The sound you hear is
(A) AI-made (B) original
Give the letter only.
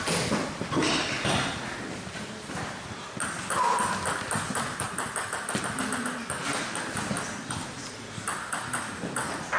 B